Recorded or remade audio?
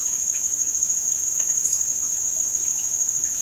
remade